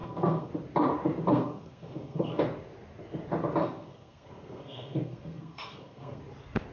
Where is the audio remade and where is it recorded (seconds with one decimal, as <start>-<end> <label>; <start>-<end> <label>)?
0.0-0.5 remade; 0.5-1.3 recorded; 1.3-2.4 remade; 2.4-3.6 recorded; 3.6-6.2 remade; 6.2-6.7 recorded